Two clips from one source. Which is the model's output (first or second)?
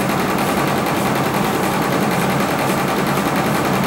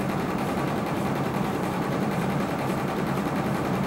second